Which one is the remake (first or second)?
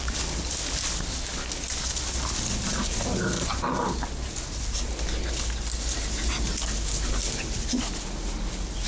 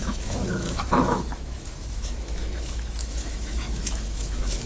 second